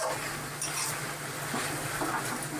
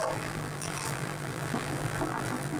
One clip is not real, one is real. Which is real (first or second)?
first